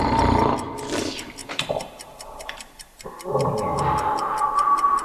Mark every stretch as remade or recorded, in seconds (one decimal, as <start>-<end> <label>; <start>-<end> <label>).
0.0-1.4 recorded; 1.4-3.5 remade; 3.5-5.0 recorded